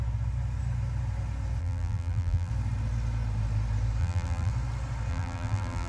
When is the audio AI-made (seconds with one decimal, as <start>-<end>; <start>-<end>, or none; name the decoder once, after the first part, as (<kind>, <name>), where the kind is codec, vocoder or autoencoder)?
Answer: 1.6-2.5 (vocoder, BigVGAN v2); 4.0-4.5; 5.1-5.9